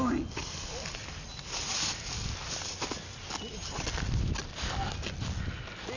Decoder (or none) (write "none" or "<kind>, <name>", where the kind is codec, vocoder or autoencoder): none